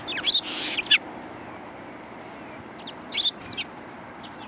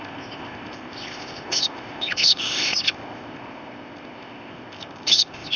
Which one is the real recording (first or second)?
first